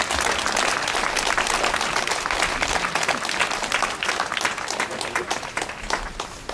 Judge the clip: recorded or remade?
recorded